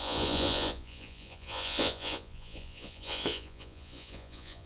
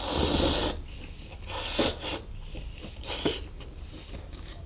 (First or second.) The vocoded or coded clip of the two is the first